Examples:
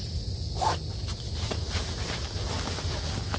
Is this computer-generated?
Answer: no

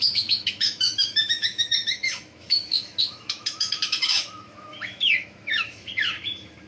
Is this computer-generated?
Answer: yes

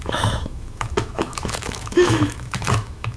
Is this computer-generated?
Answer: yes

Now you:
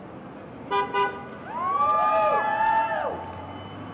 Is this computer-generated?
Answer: no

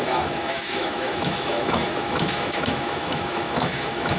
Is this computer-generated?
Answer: yes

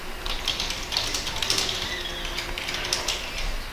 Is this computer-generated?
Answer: no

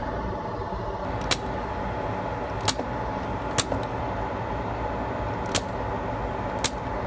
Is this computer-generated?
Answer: no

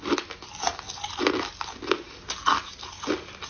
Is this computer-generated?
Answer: no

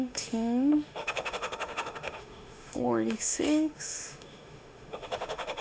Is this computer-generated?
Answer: yes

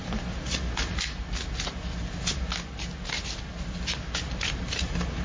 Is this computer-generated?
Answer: no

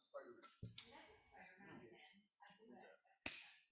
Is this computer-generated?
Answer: no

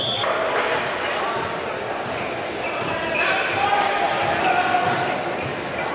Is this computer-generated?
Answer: no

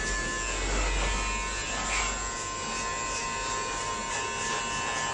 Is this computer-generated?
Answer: no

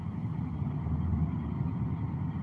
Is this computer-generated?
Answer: no